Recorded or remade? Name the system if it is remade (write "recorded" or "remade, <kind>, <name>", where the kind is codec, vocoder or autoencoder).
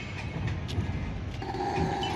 recorded